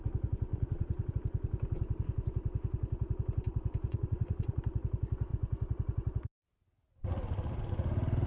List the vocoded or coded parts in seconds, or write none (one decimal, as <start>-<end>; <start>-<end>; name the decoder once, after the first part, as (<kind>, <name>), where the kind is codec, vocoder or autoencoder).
0.5-1.1 (vocoder, Vocos); 3.9-4.6